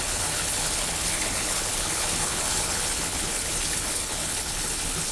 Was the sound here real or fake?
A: fake